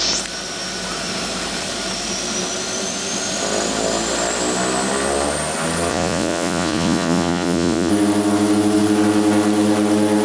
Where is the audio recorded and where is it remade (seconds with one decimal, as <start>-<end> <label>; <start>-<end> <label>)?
0.0-5.9 recorded; 5.9-7.9 remade; 7.9-10.2 recorded